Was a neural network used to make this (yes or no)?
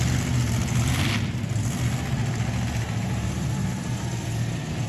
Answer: no